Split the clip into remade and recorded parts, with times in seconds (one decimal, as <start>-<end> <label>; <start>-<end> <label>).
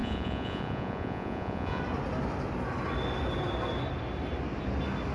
0.0-1.8 remade; 1.8-5.1 recorded